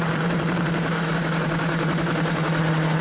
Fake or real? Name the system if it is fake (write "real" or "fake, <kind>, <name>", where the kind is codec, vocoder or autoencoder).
fake, vocoder, BigVGAN v2